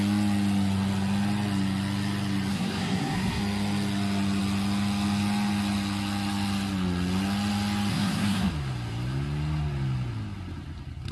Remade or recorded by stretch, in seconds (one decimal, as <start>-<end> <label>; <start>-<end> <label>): 0.0-2.5 recorded; 2.5-3.4 remade; 3.4-7.9 recorded; 7.9-8.5 remade; 8.5-11.1 recorded